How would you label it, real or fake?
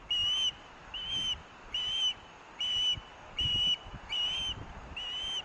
real